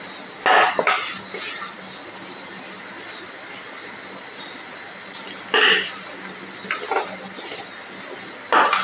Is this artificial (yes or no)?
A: no